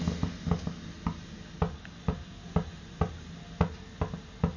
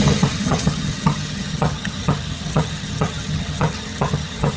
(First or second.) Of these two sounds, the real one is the first